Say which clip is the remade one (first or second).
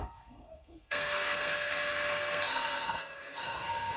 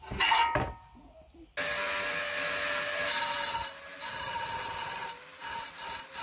first